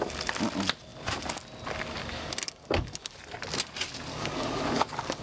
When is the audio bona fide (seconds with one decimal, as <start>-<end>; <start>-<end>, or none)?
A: 0.0-2.0; 3.2-4.1